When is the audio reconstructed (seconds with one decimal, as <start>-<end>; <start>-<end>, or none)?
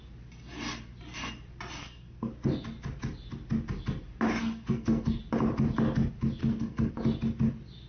1.8-2.3; 4.4-5.2; 6.4-6.9